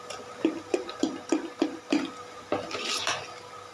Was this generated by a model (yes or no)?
no